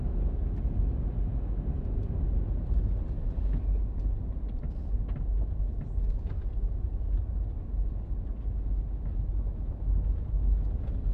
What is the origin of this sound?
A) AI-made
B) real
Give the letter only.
B